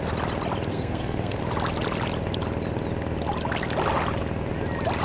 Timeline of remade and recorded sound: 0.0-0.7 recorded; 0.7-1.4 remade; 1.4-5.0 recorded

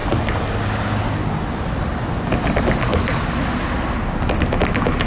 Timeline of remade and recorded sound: 0.0-5.1 recorded

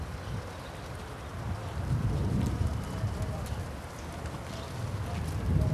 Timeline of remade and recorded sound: 0.0-1.3 recorded; 1.3-4.7 remade; 4.7-5.7 recorded

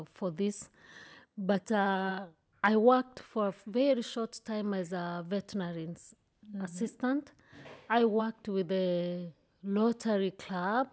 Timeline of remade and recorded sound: 0.0-0.9 recorded; 0.9-2.1 remade; 2.1-10.9 recorded

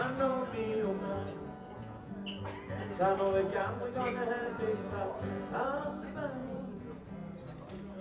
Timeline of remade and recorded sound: 0.0-2.1 remade; 2.1-3.5 recorded; 3.5-5.4 remade; 5.4-6.4 recorded; 6.4-7.0 remade; 7.0-8.0 recorded

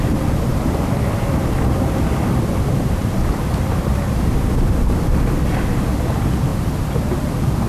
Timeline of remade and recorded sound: 0.0-7.7 recorded

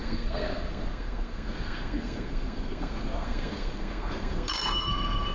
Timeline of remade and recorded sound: 0.0-5.3 remade

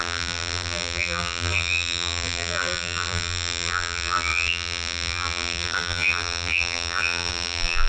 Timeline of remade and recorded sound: 0.0-7.9 remade